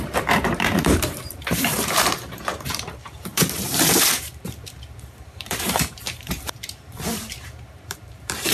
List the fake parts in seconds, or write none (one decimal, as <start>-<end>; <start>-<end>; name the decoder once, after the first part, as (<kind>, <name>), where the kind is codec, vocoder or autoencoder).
0.0-8.5 (vocoder, BigVGAN v2)